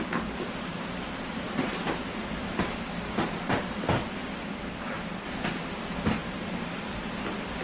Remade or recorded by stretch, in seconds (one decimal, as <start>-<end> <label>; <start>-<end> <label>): 0.0-0.7 recorded; 0.7-2.5 remade; 2.5-6.2 recorded; 6.2-7.0 remade; 7.0-7.6 recorded